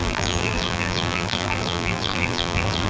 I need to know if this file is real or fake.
fake